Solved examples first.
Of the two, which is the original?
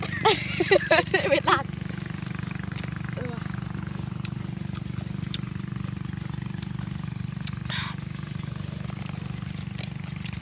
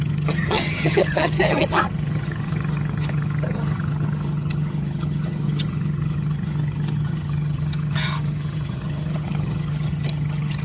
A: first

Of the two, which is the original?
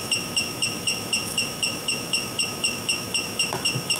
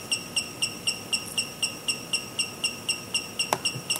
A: second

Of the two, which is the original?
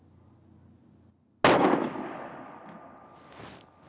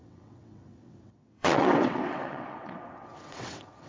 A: first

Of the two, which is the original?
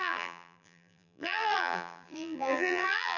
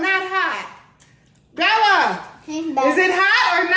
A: second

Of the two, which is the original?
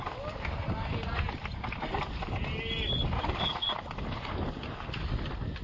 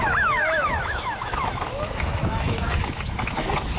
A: first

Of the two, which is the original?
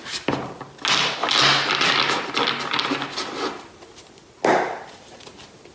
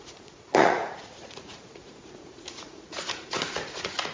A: first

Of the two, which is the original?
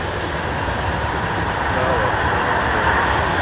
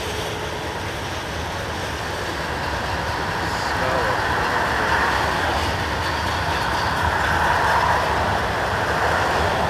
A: second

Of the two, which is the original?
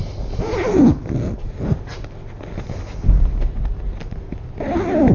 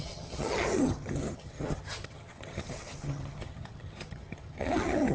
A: first